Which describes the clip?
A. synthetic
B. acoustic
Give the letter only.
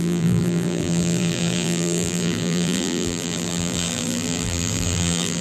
A